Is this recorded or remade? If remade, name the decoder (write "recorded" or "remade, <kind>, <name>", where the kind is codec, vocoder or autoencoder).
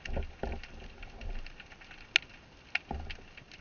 recorded